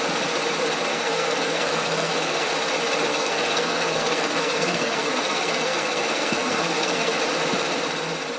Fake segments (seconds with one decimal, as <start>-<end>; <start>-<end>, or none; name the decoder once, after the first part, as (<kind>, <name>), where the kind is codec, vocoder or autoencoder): 0.9-2.5 (codec, SNAC); 3.1-7.2